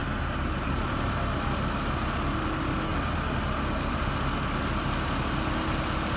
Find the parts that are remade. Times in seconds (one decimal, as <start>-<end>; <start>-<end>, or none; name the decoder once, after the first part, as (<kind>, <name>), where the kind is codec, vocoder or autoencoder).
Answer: none